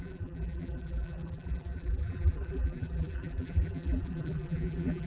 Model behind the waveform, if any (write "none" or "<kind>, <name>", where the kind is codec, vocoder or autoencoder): vocoder, BigVGAN v2